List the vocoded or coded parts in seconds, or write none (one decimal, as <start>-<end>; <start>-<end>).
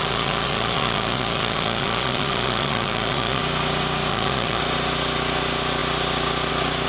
0.0-3.4; 4.1-4.6